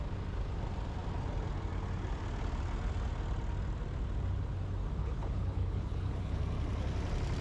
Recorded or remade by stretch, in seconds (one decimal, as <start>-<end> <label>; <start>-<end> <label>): 0.0-5.0 recorded; 5.0-6.4 remade; 6.4-7.4 recorded